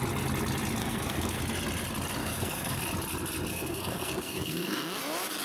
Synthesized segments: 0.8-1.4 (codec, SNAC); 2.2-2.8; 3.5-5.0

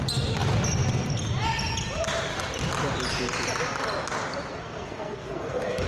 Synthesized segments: 4.5-5.9 (codec, SNAC)